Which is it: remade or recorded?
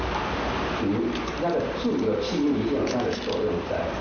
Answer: remade